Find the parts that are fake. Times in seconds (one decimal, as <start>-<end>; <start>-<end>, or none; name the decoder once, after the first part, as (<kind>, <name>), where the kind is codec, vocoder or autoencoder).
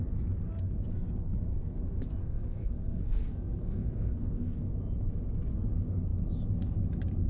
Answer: 2.2-4.7 (codec, SNAC)